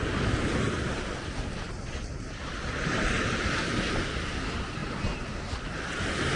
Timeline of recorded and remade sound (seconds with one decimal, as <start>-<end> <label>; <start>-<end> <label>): 0.0-4.8 remade; 4.8-5.5 recorded; 5.5-6.4 remade